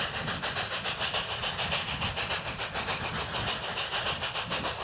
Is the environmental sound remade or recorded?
recorded